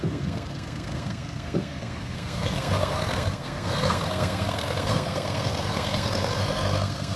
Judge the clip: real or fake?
fake